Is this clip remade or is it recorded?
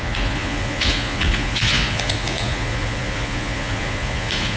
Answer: remade